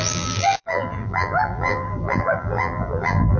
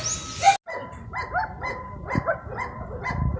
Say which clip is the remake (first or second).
first